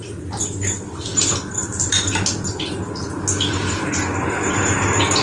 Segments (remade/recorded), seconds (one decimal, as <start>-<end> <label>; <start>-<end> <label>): 0.0-1.9 remade; 1.9-5.2 recorded